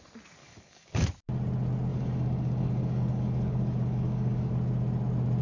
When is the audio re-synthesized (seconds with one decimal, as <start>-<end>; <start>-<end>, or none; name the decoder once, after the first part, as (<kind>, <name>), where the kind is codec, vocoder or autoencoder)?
0.4-1.1 (codec, DAC); 1.9-4.5